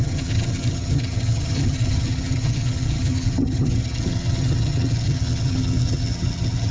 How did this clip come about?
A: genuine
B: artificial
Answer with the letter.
B